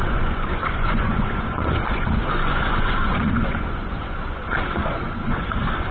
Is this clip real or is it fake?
fake